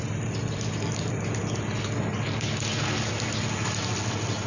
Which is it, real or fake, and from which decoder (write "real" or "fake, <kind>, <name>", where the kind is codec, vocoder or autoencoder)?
real